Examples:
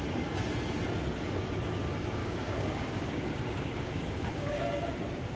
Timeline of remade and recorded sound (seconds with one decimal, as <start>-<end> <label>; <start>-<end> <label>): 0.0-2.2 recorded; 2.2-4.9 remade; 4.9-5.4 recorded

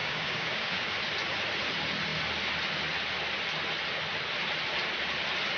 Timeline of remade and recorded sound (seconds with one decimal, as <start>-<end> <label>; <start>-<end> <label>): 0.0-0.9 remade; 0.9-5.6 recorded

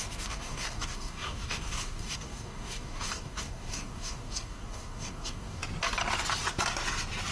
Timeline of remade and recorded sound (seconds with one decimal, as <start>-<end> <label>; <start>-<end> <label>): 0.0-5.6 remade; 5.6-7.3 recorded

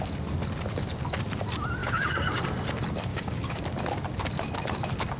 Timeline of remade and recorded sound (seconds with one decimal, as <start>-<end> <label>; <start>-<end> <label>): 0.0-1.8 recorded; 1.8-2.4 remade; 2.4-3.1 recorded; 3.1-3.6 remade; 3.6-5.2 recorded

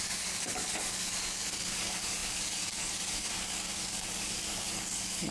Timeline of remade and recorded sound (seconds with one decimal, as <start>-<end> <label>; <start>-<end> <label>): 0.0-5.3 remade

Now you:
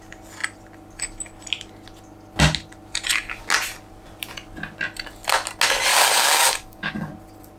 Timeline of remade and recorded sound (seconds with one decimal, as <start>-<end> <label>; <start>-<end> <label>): 0.0-5.9 recorded; 5.9-7.1 remade; 7.1-7.6 recorded

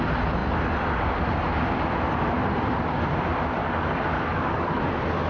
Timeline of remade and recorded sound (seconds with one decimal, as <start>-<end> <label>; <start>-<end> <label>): 0.0-3.6 recorded; 3.6-4.8 remade; 4.8-5.3 recorded

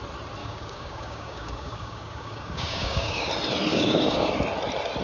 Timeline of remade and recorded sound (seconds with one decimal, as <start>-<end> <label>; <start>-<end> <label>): 0.0-0.4 recorded; 0.4-3.3 remade; 3.3-3.7 recorded; 3.7-4.3 remade; 4.3-5.0 recorded